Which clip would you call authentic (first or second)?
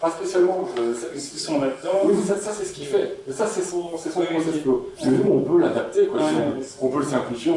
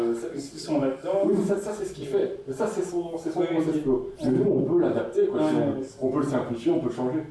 second